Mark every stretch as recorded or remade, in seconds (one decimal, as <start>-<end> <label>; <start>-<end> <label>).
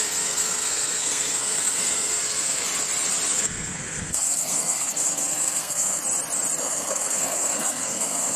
0.0-2.7 remade; 2.7-3.3 recorded; 3.3-6.0 remade; 6.0-6.6 recorded; 6.6-8.4 remade